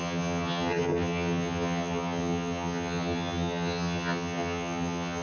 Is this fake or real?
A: fake